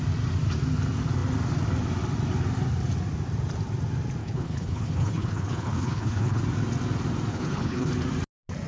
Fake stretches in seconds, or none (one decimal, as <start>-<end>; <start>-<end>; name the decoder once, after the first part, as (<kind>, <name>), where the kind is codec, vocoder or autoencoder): 4.2-6.4 (codec, HILCodec); 7.3-7.9